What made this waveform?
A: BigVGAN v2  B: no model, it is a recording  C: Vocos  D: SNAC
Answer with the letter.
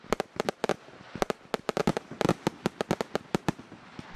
B